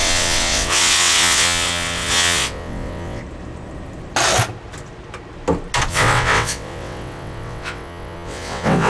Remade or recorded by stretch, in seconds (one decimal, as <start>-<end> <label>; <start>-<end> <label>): 0.0-3.2 remade; 3.2-5.9 recorded; 5.9-8.9 remade